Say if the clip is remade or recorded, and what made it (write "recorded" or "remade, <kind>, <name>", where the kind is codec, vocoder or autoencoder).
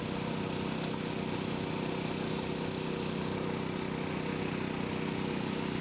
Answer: recorded